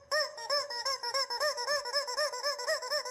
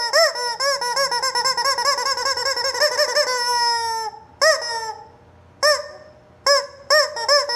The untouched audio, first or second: second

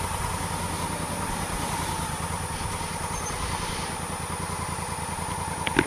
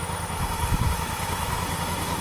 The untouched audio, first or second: first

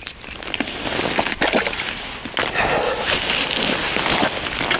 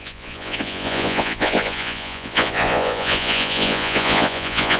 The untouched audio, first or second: first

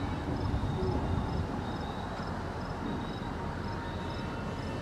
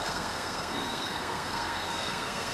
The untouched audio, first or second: first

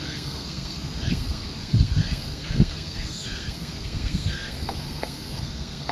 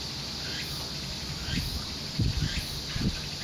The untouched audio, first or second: second